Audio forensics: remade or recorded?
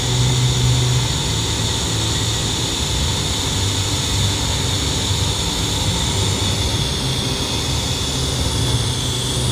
recorded